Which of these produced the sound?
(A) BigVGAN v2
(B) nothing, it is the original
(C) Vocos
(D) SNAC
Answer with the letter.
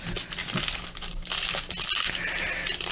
B